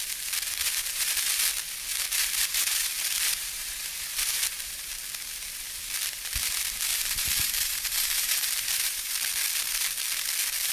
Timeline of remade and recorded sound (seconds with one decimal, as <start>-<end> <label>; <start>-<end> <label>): 0.0-0.6 recorded; 0.6-1.5 remade; 1.5-1.9 recorded; 1.9-4.9 remade; 4.9-6.9 recorded; 6.9-9.1 remade; 9.1-10.7 recorded